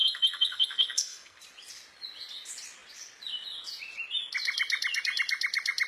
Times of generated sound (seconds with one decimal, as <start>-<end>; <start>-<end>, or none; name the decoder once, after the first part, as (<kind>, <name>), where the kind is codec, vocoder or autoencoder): 0.0-1.4 (codec, SNAC)